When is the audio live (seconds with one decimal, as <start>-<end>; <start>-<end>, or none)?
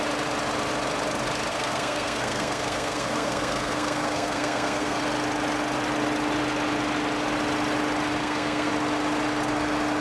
0.0-1.5; 5.0-8.2; 8.7-10.0